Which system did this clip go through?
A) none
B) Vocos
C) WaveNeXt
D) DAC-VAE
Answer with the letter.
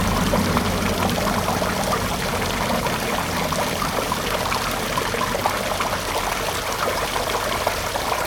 A